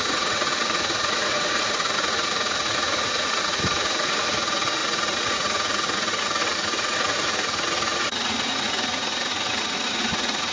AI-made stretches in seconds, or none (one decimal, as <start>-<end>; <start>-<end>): 0.0-10.5